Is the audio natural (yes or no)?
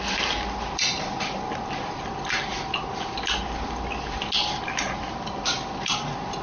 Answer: yes